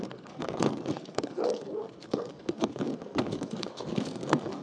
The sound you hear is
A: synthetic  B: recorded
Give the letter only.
A